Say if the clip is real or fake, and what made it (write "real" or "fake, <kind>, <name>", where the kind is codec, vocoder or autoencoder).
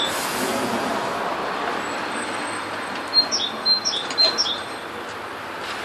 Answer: real